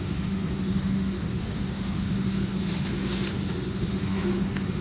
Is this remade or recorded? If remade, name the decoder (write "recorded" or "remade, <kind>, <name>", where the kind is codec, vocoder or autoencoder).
remade, autoencoder, DAC-VAE